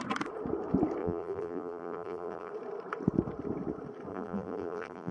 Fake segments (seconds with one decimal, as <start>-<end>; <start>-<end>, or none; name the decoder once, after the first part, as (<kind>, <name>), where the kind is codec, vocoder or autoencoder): 1.0-2.5 (vocoder, BigVGAN v2); 4.1-5.1